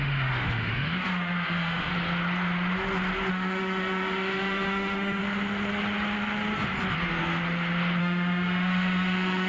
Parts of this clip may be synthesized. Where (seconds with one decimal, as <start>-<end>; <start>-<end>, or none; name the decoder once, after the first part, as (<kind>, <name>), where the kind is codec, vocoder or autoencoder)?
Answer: 0.0-1.9 (autoencoder, DAC-VAE); 3.3-5.2; 8.0-9.5